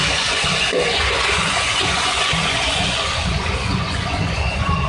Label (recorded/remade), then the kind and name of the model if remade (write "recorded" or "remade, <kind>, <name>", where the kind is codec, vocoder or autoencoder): remade, vocoder, Vocos